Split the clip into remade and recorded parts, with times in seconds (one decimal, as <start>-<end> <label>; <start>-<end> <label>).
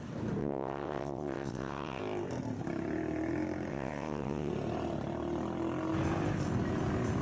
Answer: 0.0-0.4 recorded; 0.4-2.0 remade; 2.0-3.7 recorded; 3.7-4.5 remade; 4.5-7.2 recorded